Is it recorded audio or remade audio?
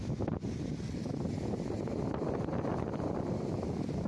recorded